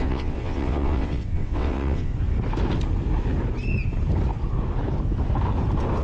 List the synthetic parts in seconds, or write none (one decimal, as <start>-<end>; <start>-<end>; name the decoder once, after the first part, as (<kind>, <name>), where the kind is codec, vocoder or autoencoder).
0.0-2.1 (vocoder, WaveNeXt)